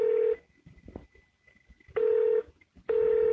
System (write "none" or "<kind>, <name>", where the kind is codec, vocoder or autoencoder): none